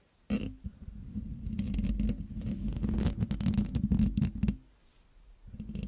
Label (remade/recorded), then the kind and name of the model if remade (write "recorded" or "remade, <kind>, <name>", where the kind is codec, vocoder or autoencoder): recorded